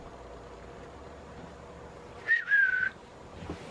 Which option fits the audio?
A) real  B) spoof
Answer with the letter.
A